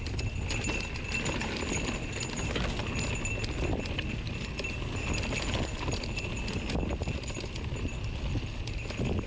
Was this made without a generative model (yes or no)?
yes